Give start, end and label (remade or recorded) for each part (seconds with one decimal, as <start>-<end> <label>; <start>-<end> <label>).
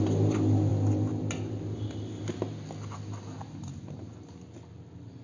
0.0-5.2 recorded